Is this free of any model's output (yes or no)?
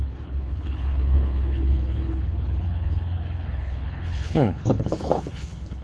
no